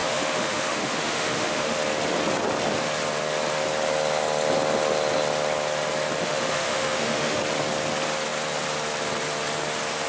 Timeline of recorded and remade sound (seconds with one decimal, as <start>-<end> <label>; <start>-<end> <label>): 0.0-1.8 remade; 1.8-6.2 recorded; 6.2-7.4 remade; 7.4-10.1 recorded